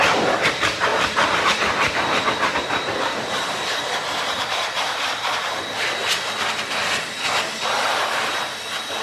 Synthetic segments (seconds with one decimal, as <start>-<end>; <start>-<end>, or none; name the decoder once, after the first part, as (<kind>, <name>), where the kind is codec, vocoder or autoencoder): 0.9-5.5 (vocoder, BigVGAN v2)